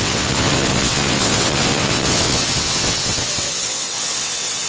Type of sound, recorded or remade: remade